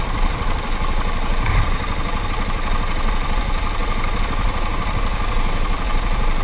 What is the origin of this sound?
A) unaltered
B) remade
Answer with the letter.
B